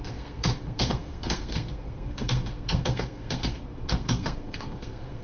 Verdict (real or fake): fake